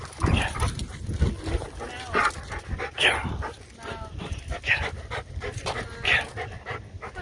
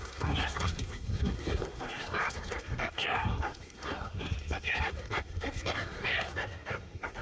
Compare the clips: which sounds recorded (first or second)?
first